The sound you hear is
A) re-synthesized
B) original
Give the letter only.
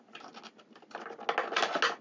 B